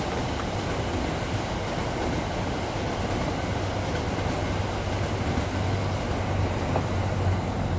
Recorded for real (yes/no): yes